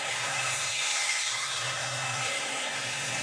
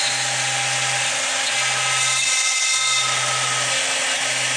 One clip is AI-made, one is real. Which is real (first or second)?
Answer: second